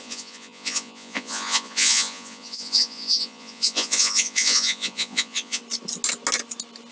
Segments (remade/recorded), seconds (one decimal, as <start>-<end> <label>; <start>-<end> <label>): 0.0-5.6 remade; 5.6-6.9 recorded